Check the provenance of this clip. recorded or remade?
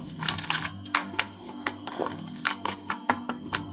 remade